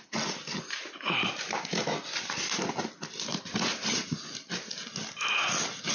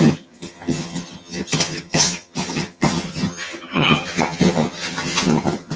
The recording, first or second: first